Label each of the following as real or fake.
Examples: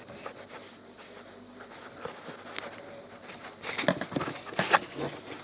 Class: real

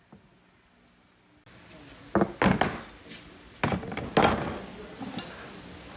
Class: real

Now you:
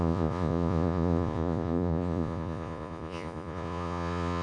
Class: fake